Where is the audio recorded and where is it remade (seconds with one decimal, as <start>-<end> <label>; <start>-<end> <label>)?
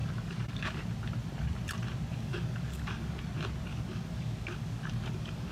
0.0-0.8 remade; 0.8-2.1 recorded; 2.1-3.2 remade; 3.2-3.7 recorded; 3.7-5.5 remade